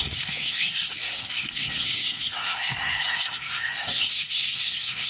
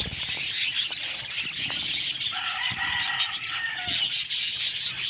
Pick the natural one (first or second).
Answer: second